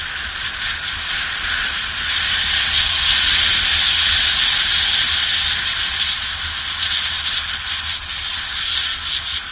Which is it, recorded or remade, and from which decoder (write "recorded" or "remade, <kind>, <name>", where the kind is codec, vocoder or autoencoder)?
recorded